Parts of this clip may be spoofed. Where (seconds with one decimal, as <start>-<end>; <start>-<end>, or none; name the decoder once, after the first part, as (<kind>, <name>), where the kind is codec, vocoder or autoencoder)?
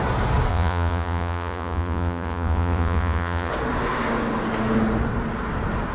0.5-3.5 (vocoder, Vocos)